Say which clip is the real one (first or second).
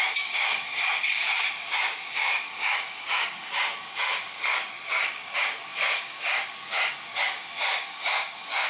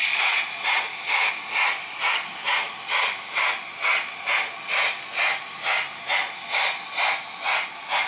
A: second